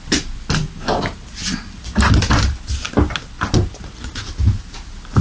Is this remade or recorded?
recorded